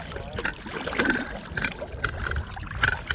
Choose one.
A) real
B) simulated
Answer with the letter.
A